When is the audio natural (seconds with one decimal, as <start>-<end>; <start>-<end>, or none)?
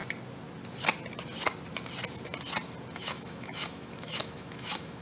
0.0-3.0